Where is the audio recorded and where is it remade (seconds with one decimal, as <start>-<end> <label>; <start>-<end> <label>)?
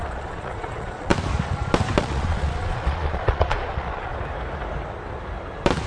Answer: 0.0-1.1 remade; 1.1-2.0 recorded; 2.0-4.1 remade; 4.1-5.9 recorded